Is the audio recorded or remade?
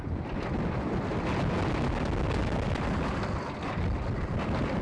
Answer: recorded